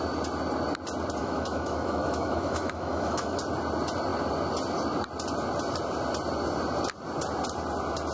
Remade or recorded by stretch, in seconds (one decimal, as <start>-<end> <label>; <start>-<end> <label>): 0.0-1.2 recorded; 1.2-3.4 remade; 3.4-8.1 recorded